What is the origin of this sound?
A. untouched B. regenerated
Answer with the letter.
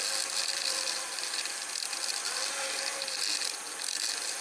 A